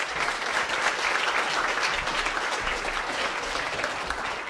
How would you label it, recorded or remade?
recorded